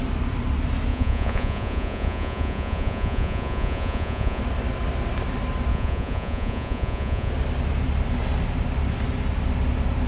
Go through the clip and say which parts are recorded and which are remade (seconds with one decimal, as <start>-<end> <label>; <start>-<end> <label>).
0.0-0.9 recorded; 0.9-4.4 remade; 4.4-5.7 recorded; 5.7-7.3 remade; 7.3-10.1 recorded